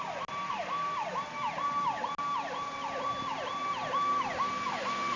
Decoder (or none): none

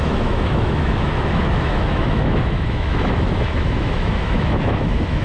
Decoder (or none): autoencoder, DAC-VAE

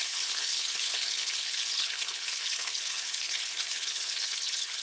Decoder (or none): codec, HILCodec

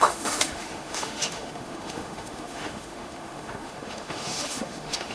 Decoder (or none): autoencoder, DAC-VAE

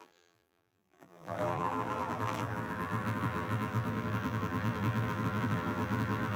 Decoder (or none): vocoder, BigVGAN v2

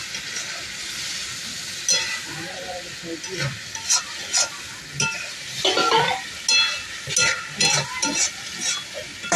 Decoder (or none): none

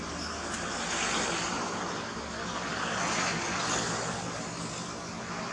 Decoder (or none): none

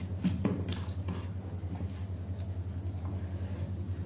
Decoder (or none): none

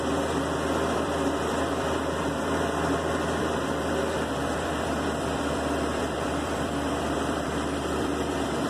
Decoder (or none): vocoder, BigVGAN v2